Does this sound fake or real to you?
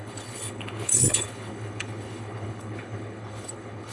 fake